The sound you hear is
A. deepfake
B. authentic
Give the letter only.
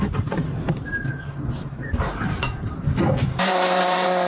A